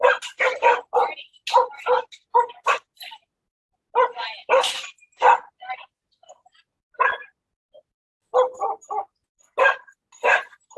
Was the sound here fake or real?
real